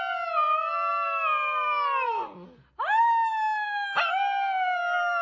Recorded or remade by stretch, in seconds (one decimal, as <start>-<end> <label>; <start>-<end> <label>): 0.0-5.2 recorded